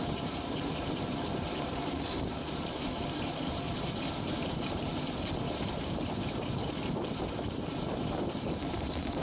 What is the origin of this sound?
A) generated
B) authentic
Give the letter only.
A